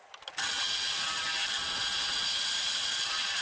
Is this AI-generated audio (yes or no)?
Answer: no